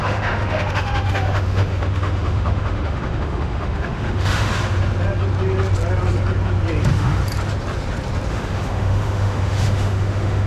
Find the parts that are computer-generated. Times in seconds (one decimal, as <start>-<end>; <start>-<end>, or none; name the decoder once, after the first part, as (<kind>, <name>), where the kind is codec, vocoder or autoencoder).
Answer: 0.0-4.5 (autoencoder, DAC-VAE); 6.8-7.2; 8.3-10.5